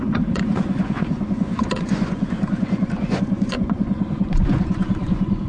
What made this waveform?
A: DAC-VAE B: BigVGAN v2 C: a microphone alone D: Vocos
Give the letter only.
D